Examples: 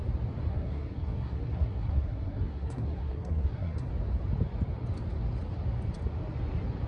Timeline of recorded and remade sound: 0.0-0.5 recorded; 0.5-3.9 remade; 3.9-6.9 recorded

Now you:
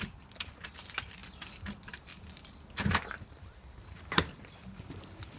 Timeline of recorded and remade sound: 0.0-5.4 remade

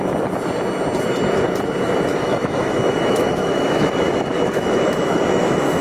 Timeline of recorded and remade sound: 0.0-2.1 recorded; 2.1-5.8 remade

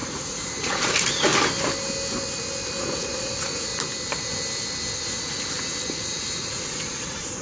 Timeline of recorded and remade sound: 0.0-1.3 remade; 1.3-2.8 recorded; 2.8-3.7 remade; 3.7-5.9 recorded; 5.9-7.4 remade